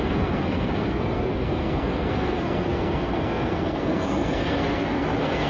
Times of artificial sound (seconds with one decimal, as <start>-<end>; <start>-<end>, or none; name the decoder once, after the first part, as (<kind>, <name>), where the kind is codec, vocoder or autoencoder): 0.0-5.5 (codec, SNAC)